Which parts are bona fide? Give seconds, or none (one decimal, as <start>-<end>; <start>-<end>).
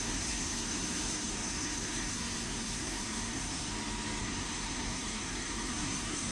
3.7-4.2